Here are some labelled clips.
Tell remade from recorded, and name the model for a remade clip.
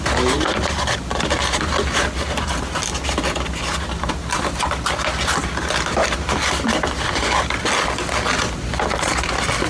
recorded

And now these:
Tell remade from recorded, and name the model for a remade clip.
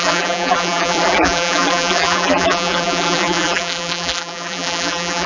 remade, vocoder, BigVGAN v2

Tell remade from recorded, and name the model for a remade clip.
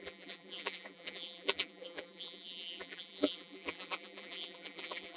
remade, vocoder, BigVGAN v2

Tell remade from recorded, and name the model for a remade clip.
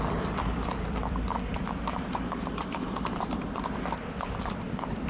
remade, vocoder, BigVGAN v2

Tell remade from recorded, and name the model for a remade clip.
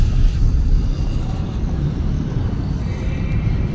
remade, vocoder, BigVGAN v2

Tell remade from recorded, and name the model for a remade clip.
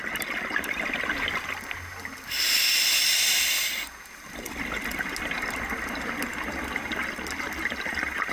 recorded